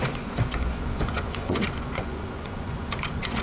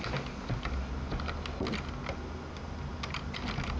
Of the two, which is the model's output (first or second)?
first